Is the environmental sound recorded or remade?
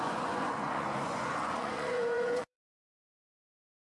remade